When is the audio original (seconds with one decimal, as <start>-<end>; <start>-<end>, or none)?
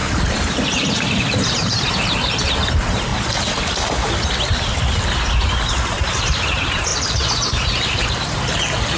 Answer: 3.1-5.8; 6.9-8.0